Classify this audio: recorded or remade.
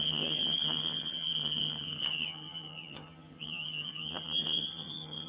remade